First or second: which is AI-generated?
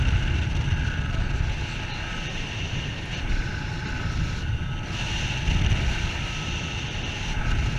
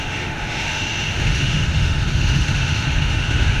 second